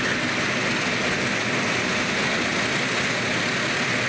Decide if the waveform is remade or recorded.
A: recorded